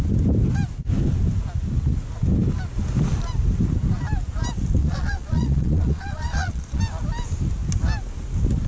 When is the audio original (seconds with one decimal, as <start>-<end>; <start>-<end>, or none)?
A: 0.0-4.8; 6.8-8.7